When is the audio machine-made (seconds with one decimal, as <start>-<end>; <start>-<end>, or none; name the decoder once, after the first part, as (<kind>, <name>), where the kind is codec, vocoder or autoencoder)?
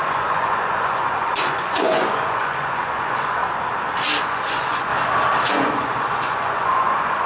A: 0.0-3.4 (vocoder, Vocos); 4.2-4.9; 5.5-7.3